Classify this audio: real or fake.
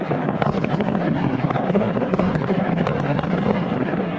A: fake